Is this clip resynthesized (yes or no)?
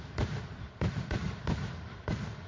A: no